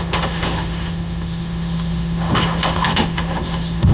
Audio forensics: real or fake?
fake